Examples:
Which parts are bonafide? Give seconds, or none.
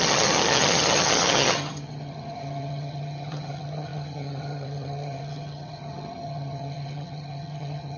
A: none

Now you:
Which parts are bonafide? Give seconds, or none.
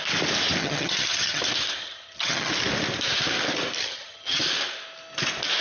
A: 0.0-0.6; 1.4-1.8; 2.5-3.8; 4.4-5.6